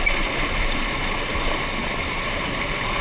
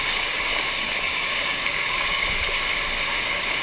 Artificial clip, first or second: second